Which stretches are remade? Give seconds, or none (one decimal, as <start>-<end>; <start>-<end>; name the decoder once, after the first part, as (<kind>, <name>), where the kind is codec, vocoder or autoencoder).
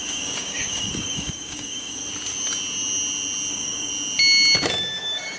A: 0.0-2.0 (codec, DAC); 3.5-3.9; 5.0-5.4